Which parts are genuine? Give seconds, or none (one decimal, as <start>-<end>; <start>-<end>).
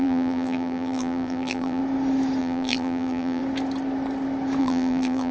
1.8-2.4; 3.4-4.6